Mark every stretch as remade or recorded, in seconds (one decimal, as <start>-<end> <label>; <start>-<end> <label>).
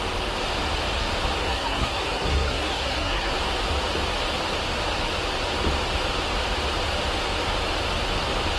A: 0.0-1.4 recorded; 1.4-3.3 remade; 3.3-8.6 recorded